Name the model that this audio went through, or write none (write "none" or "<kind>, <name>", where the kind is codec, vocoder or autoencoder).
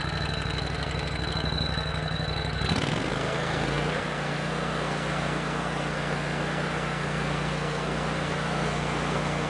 codec, SNAC